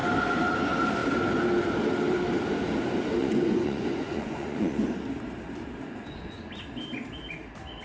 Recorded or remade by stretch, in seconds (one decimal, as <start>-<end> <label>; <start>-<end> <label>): 0.0-3.2 recorded; 3.2-4.8 remade; 4.8-5.8 recorded; 5.8-6.4 remade; 6.4-7.8 recorded